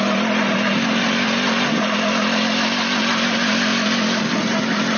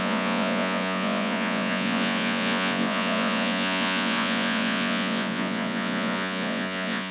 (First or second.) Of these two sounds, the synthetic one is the second